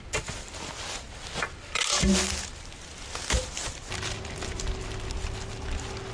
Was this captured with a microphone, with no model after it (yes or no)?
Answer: yes